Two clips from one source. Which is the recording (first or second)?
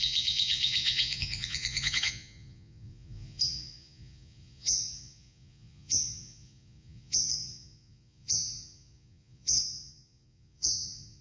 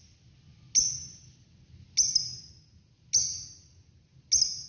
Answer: second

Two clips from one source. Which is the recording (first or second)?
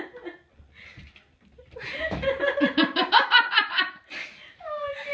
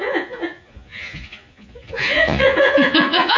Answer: first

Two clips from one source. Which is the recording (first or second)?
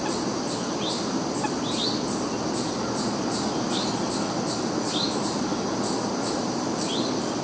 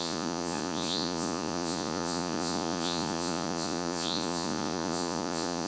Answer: first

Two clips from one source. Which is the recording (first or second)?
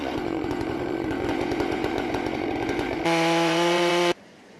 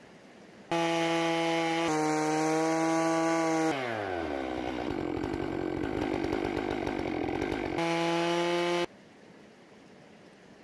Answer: second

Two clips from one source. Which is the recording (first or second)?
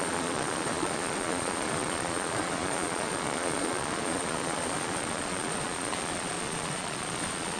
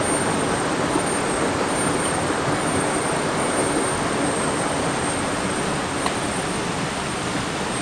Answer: second